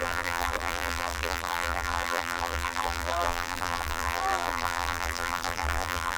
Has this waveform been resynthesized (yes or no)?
yes